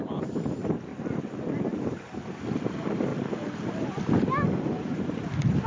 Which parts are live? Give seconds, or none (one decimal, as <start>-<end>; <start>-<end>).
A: 0.9-1.8; 3.1-4.8